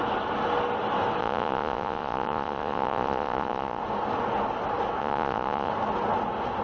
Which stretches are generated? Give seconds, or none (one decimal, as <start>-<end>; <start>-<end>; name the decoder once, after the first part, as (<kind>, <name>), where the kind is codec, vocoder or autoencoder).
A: 1.2-3.8 (vocoder, Vocos); 5.0-5.7